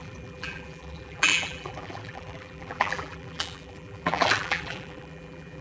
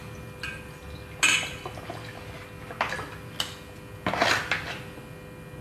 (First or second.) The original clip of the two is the second